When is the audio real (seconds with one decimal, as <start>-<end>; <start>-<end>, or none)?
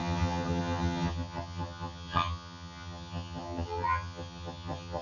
none